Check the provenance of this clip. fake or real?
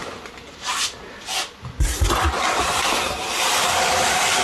real